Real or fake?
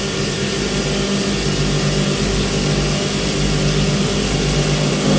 real